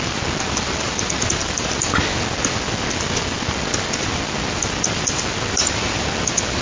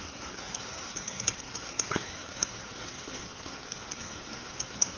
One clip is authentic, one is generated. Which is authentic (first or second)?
first